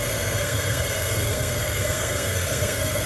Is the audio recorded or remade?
remade